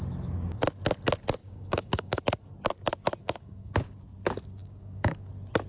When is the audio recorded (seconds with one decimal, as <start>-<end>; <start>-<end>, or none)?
0.0-1.4; 2.2-3.2; 3.9-4.6; 5.3-5.7